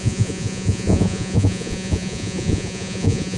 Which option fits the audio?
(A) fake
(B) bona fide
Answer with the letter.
A